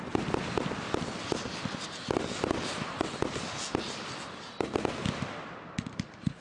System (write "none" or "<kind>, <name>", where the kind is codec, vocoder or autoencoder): none